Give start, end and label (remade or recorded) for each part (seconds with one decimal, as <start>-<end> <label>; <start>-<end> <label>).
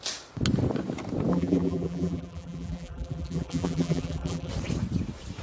0.0-1.3 recorded; 1.3-4.5 remade; 4.5-5.4 recorded